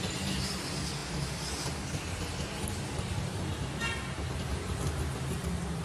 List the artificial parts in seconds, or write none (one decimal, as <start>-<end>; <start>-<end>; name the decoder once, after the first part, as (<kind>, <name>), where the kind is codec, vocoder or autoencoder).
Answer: none